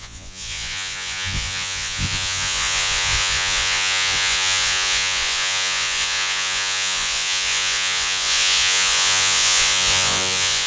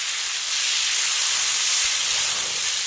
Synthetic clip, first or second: first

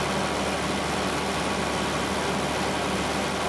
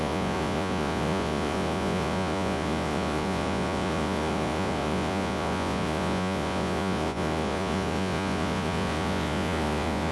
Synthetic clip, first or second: second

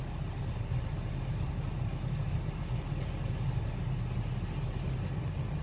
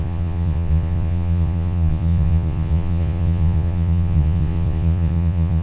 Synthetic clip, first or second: second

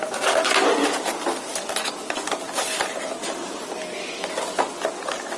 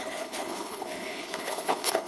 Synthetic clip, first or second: second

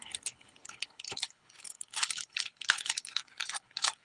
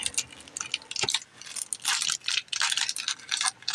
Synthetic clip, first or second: first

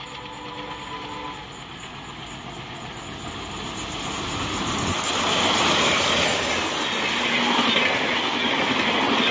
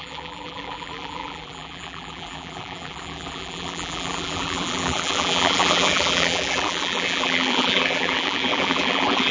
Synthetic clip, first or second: second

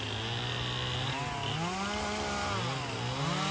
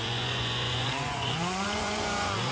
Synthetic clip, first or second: second